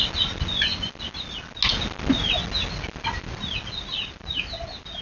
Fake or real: real